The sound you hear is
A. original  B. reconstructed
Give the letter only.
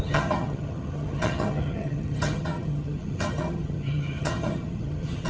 B